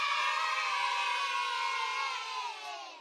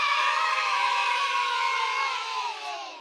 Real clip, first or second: first